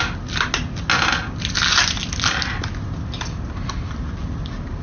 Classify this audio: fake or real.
real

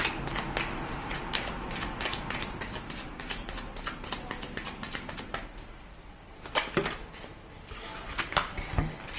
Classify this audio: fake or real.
real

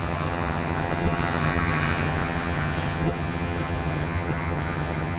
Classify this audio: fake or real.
fake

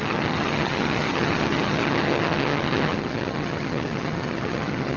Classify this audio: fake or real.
fake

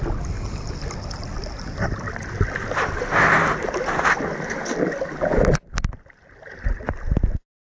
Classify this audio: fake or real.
real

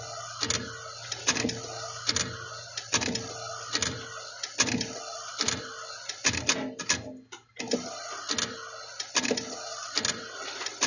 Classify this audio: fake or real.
real